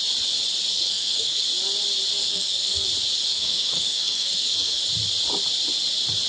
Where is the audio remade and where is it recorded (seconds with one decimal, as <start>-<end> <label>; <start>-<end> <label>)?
0.0-0.7 recorded; 0.7-1.4 remade; 1.4-2.2 recorded; 2.2-2.9 remade; 2.9-3.3 recorded; 3.3-4.8 remade; 4.8-6.3 recorded